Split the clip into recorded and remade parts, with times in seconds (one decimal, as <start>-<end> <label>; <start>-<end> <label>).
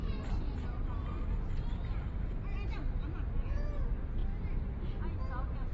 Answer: 0.0-0.9 remade; 0.9-5.7 recorded